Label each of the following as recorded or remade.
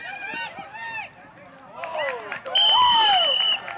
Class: recorded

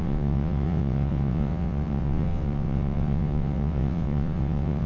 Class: remade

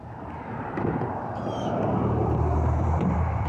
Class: remade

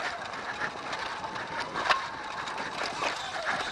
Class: recorded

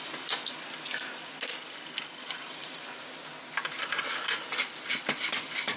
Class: recorded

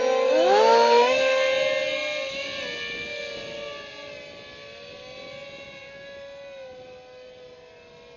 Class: recorded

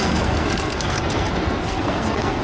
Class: remade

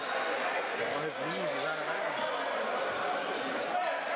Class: recorded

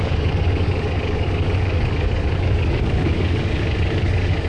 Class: remade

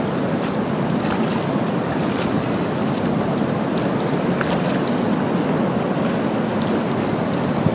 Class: recorded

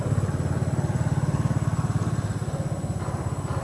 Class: recorded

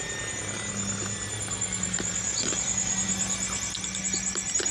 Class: recorded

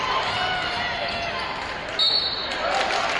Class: recorded